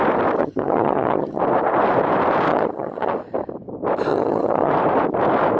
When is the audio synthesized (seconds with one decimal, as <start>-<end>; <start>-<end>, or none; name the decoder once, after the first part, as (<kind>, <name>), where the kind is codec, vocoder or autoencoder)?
0.4-1.4 (vocoder, HiFi-GAN); 2.5-3.1; 4.1-4.7